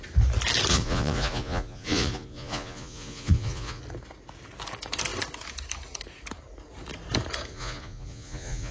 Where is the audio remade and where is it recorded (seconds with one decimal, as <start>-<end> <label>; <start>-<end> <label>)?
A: 0.0-0.7 recorded; 0.7-3.8 remade; 3.8-7.5 recorded; 7.5-8.7 remade